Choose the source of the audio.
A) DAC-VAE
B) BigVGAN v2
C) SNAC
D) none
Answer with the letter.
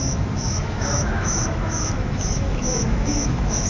A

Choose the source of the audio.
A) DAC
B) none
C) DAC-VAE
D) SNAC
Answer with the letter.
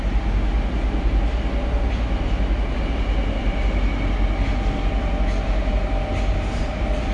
B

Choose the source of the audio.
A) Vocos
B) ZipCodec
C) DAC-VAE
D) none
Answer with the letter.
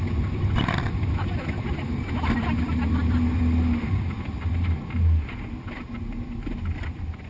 D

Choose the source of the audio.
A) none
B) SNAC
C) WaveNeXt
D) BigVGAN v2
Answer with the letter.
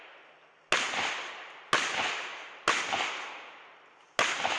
A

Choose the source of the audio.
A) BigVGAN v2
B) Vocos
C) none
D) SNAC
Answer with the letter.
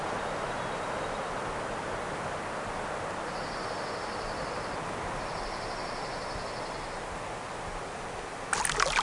C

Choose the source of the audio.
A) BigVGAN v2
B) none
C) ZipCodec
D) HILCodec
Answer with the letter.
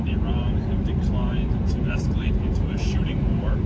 A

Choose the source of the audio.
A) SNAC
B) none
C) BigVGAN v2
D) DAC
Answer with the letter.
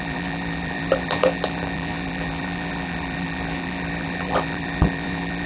C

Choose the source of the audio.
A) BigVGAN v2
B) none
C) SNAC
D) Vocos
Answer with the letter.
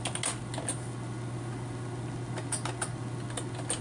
B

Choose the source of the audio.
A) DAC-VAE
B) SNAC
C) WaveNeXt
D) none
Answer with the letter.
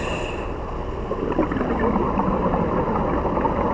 D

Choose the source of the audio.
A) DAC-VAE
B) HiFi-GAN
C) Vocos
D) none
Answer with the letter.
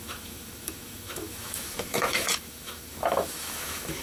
A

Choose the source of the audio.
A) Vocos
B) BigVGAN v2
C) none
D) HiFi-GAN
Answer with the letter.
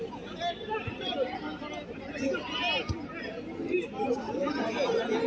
C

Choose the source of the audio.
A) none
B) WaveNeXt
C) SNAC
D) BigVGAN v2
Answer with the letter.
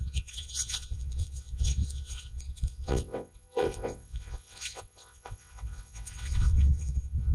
B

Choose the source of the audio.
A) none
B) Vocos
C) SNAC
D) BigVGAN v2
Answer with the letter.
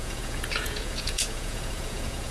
B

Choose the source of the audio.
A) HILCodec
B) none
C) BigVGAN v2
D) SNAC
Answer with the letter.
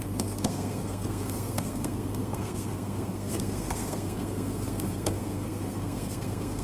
D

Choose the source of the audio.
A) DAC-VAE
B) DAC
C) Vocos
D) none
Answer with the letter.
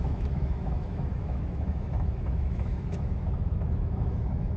A